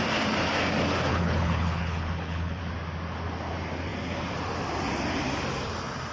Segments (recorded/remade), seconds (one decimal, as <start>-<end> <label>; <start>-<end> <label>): 0.0-1.1 recorded; 1.1-2.6 remade; 2.6-6.1 recorded